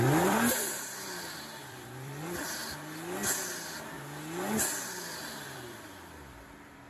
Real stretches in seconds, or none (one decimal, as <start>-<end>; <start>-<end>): 2.6-5.4